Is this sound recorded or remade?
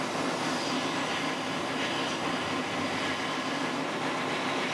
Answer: recorded